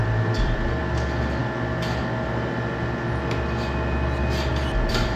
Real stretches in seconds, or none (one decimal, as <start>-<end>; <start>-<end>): none